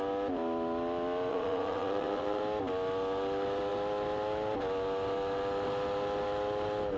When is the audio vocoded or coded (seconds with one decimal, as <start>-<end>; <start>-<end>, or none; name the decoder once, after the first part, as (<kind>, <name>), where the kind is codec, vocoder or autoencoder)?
1.3-2.4 (vocoder, WaveNeXt)